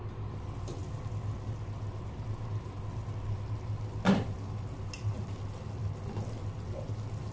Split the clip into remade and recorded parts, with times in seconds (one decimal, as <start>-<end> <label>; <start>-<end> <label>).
0.0-7.3 recorded